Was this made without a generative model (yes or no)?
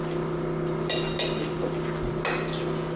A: yes